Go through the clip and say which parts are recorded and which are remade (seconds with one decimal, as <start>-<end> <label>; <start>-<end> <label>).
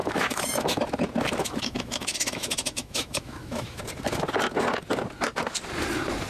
0.0-0.8 remade; 0.8-1.4 recorded; 1.4-3.8 remade; 3.8-6.3 recorded